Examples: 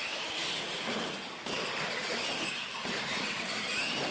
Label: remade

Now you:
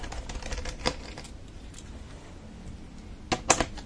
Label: recorded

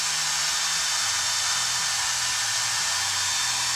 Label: recorded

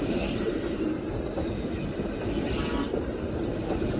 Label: recorded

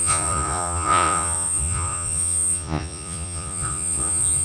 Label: remade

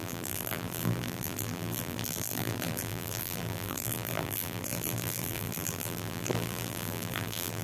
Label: remade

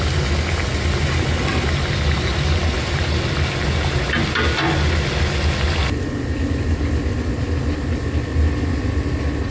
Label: recorded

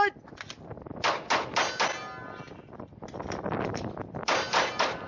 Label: recorded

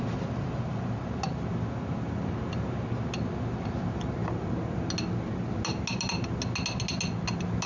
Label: recorded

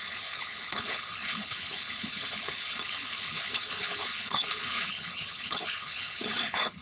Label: remade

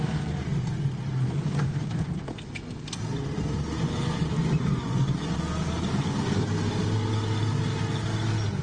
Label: recorded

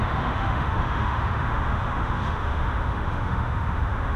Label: remade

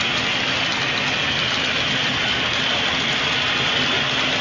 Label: recorded